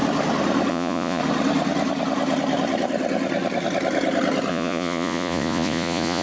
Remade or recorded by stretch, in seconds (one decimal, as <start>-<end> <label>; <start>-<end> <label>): 0.0-0.7 recorded; 0.7-1.2 remade; 1.2-4.5 recorded; 4.5-6.2 remade